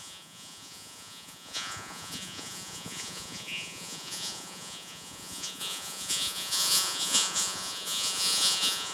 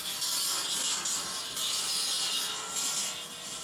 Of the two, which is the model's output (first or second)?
first